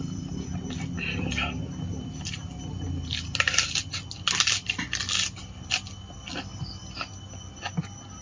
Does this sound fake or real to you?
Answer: real